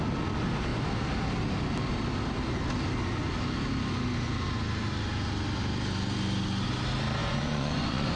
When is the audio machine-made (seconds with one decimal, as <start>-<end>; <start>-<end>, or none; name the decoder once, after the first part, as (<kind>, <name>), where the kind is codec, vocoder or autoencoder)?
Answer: 7.2-8.2 (vocoder, Vocos)